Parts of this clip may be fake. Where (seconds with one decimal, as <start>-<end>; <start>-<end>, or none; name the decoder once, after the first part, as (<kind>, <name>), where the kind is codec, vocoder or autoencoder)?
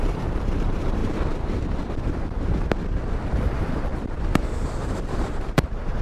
0.0-1.0 (vocoder, BigVGAN v2); 3.4-3.9; 4.8-6.0